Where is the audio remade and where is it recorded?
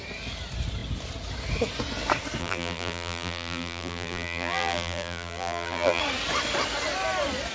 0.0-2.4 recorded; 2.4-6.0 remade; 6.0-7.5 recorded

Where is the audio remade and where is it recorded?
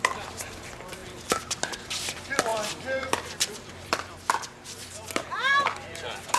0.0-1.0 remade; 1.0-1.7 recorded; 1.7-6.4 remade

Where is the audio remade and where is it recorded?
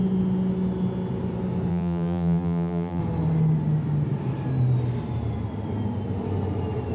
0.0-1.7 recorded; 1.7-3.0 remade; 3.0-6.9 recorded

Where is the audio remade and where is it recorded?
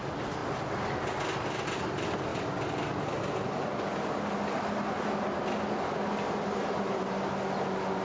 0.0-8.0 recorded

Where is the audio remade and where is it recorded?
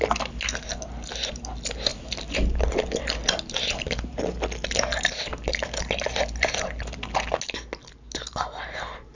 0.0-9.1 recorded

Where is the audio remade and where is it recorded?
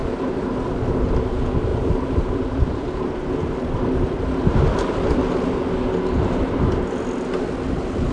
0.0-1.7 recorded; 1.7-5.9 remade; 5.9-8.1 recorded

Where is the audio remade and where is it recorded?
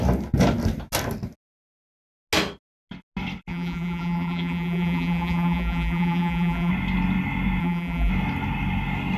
0.0-3.5 recorded; 3.5-6.7 remade; 6.7-7.6 recorded; 7.6-8.1 remade; 8.1-9.2 recorded